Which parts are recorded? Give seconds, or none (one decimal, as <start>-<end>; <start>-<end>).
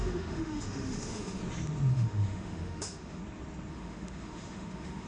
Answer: 1.4-1.9; 3.2-3.7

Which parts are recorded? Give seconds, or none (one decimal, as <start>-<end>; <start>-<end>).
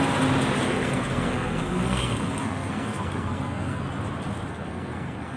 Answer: 0.0-0.6; 3.8-4.5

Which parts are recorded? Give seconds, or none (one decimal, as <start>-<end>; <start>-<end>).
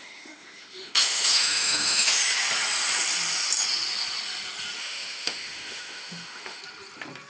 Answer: 2.2-4.8; 6.6-7.3